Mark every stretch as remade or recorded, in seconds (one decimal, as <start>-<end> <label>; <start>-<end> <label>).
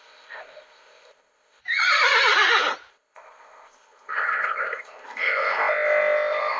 0.0-1.6 remade; 1.6-2.9 recorded; 2.9-6.6 remade